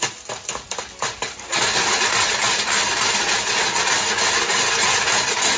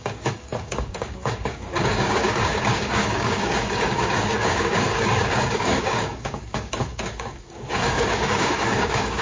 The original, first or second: first